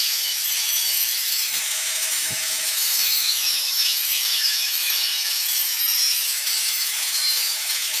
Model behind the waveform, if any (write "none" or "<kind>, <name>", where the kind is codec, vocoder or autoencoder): autoencoder, DAC-VAE